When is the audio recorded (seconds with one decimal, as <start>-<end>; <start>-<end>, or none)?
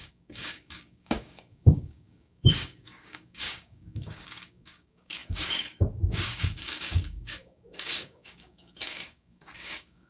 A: none